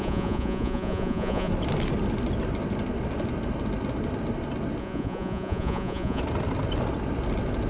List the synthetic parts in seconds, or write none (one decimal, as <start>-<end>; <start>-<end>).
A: 0.0-1.5; 4.8-6.2